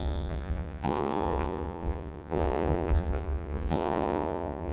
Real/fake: fake